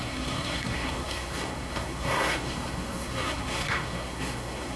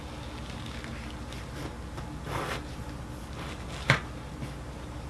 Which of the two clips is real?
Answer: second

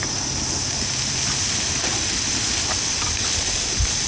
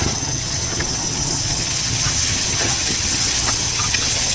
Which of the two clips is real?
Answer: first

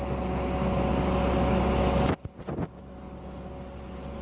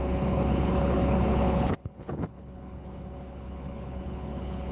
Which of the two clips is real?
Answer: first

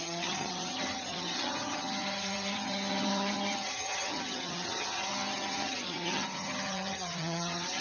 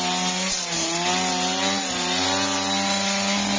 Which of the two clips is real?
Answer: second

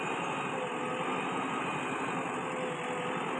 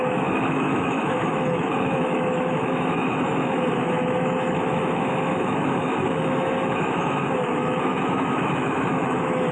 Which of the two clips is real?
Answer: first